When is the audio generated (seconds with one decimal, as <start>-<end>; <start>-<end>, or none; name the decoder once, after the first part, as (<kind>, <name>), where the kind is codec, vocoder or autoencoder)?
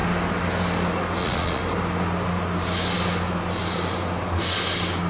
1.2-1.6 (vocoder, Vocos)